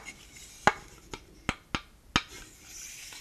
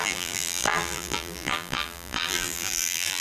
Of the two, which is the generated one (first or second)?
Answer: second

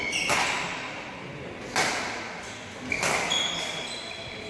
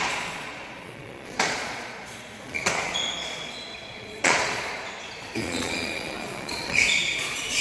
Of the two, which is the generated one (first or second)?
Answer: second